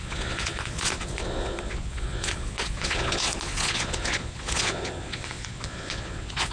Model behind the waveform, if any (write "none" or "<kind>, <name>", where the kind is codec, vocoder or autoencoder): vocoder, Vocos